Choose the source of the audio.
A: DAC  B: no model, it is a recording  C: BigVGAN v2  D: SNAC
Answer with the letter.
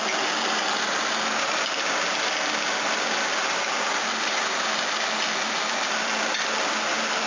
B